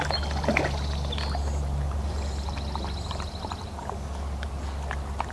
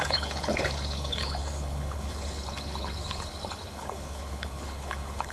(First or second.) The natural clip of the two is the first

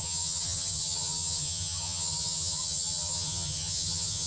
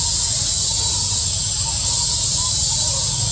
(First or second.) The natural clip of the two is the second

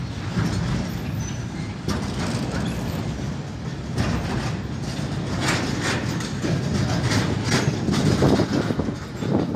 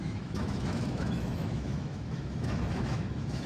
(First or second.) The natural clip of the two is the first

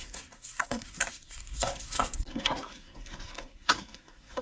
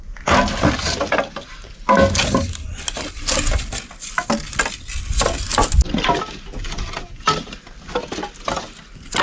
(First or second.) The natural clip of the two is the second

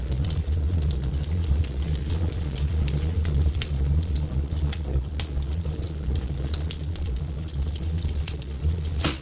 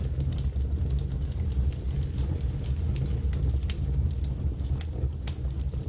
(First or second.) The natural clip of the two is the second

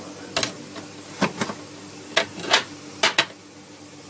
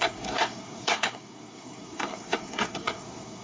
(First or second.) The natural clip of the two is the first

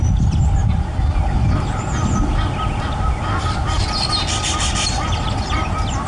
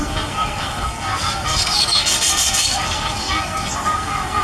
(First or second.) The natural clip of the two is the first